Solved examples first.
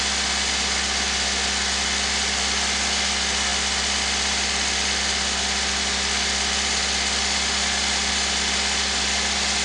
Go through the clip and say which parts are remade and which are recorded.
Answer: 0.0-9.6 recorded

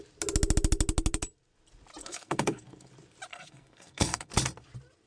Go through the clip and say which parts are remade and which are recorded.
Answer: 0.0-2.0 recorded; 2.0-2.9 remade; 2.9-3.3 recorded; 3.3-4.3 remade; 4.3-5.1 recorded

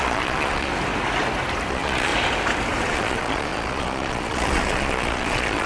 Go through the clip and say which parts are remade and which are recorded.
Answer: 0.0-0.7 remade; 0.7-1.7 recorded; 1.7-2.1 remade; 2.1-2.9 recorded; 2.9-5.7 remade

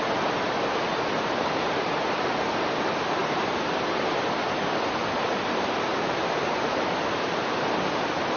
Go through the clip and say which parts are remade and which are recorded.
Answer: 0.0-0.9 recorded; 0.9-2.8 remade; 2.8-3.2 recorded; 3.2-4.6 remade; 4.6-5.9 recorded; 5.9-7.4 remade; 7.4-8.4 recorded

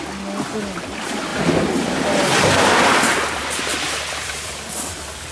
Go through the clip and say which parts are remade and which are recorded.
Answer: 0.0-3.7 recorded; 3.7-4.5 remade; 4.5-5.3 recorded

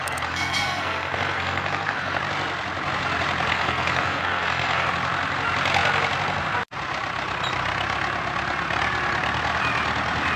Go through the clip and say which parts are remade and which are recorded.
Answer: 0.0-2.2 remade; 2.2-3.5 recorded; 3.5-4.9 remade; 4.9-10.4 recorded

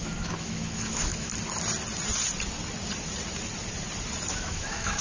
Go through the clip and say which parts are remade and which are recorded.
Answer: 0.0-1.3 remade; 1.3-4.3 recorded; 4.3-5.0 remade